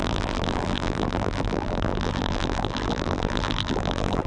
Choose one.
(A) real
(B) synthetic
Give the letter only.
B